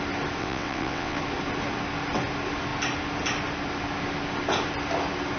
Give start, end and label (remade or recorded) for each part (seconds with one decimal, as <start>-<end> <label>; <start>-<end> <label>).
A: 0.0-0.4 recorded; 0.4-1.2 remade; 1.2-5.4 recorded